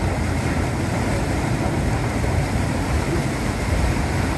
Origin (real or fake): real